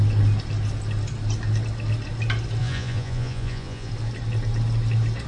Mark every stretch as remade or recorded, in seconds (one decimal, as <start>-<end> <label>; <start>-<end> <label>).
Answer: 0.0-2.6 recorded; 2.6-3.9 remade; 3.9-5.3 recorded